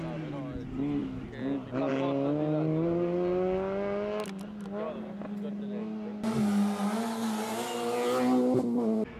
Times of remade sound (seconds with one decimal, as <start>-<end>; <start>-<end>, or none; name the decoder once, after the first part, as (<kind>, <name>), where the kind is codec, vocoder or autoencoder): none